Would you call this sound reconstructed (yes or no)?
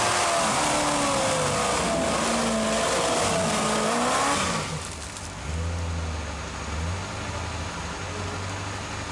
no